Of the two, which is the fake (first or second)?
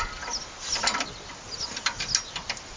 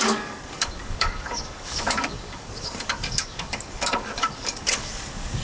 second